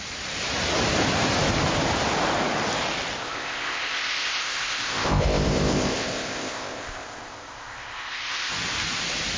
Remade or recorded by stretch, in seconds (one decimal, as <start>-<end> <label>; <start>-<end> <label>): 0.0-3.2 recorded; 3.2-8.5 remade; 8.5-9.4 recorded